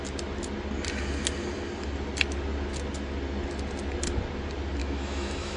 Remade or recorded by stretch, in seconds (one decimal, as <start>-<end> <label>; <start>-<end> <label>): 0.0-4.8 recorded; 4.8-5.6 remade